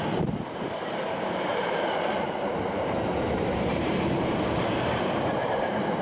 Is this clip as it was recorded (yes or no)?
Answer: no